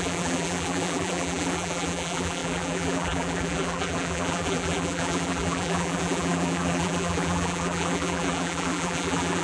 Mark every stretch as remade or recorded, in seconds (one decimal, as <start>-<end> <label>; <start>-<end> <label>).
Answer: 0.0-9.4 remade